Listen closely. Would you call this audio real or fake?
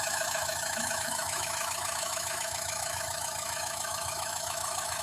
fake